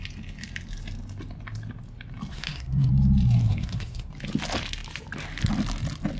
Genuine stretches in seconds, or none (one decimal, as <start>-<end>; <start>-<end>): 0.0-2.3; 2.9-3.4; 4.1-6.2